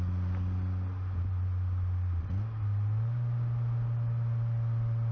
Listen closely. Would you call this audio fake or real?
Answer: real